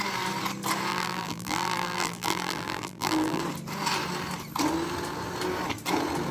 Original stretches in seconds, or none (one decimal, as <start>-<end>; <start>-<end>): 0.0-0.9; 3.4-6.3